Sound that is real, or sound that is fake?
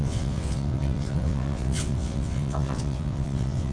fake